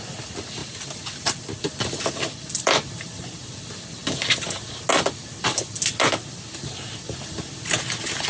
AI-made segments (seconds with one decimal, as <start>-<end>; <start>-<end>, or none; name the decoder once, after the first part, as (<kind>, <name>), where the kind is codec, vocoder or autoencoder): none